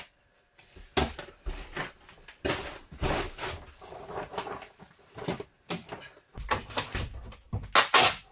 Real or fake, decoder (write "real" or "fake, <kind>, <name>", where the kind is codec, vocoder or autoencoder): real